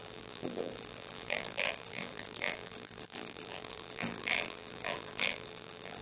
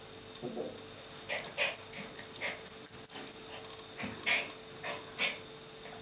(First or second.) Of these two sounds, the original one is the second